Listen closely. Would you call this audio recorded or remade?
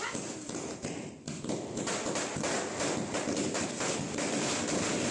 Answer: recorded